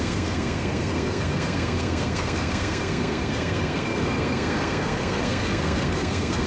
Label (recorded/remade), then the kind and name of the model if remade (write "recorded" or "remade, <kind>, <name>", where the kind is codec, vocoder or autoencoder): remade, codec, SNAC